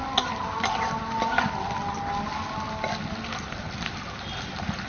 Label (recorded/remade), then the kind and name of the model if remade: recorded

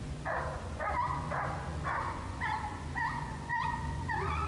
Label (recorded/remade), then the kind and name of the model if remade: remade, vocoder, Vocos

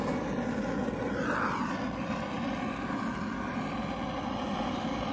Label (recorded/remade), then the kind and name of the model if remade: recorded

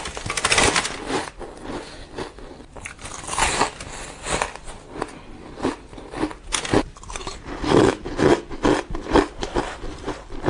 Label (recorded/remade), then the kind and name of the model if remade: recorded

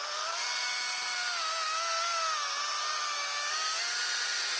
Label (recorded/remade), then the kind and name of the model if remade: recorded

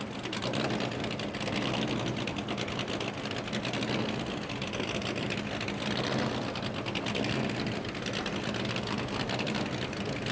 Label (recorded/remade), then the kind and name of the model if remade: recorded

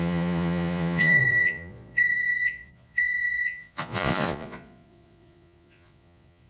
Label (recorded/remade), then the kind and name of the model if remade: remade, vocoder, Vocos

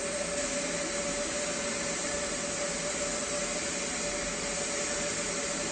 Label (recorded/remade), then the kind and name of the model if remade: recorded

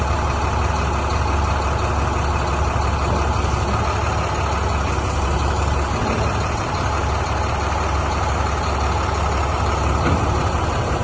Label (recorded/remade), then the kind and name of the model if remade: recorded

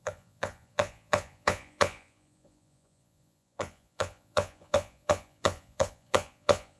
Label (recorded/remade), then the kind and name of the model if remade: remade, vocoder, Vocos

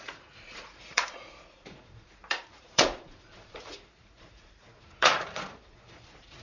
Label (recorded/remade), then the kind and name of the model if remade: remade, vocoder, Vocos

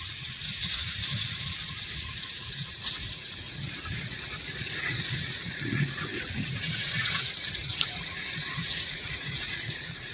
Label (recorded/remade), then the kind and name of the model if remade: remade, vocoder, Vocos